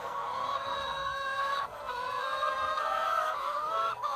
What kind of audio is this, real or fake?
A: fake